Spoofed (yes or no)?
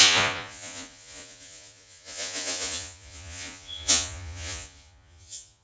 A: yes